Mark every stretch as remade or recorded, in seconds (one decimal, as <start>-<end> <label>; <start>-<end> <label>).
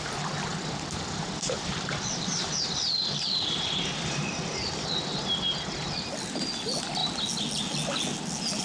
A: 0.0-0.5 recorded; 0.5-4.7 remade; 4.7-8.6 recorded